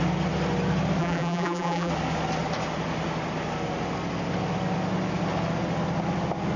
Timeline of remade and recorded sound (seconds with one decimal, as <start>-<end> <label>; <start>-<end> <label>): 0.0-1.0 recorded; 1.0-1.9 remade; 1.9-6.6 recorded